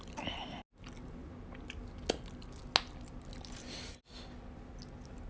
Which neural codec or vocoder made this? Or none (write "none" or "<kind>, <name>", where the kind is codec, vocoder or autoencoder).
none